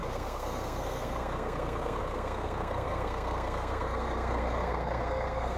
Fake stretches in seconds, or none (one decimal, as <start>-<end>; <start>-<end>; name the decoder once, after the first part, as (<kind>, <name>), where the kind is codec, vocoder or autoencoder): 0.0-5.6 (codec, SNAC)